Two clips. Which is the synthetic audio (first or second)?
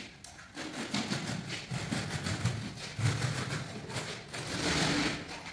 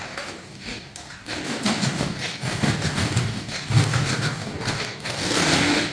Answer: second